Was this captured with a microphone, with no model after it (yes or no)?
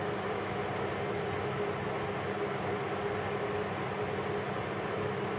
yes